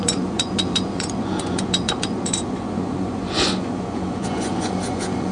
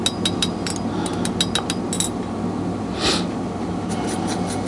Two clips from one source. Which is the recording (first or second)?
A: second